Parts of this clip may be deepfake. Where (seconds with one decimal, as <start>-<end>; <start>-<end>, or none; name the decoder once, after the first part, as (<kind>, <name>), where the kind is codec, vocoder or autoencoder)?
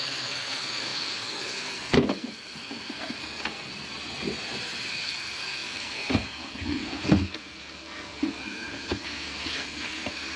0.0-3.7 (codec, SNAC); 4.9-10.4